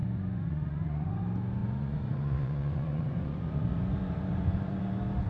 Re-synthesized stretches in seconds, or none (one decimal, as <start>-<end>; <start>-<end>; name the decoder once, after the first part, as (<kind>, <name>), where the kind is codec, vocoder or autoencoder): 0.0-1.2 (vocoder, Vocos); 1.6-4.8